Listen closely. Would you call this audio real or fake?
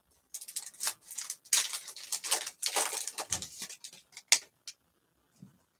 real